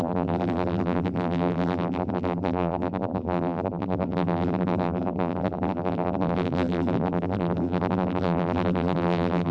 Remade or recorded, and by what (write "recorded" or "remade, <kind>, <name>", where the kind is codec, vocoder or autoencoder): remade, vocoder, BigVGAN v2